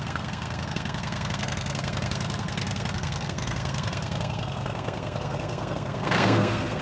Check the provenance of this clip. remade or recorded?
remade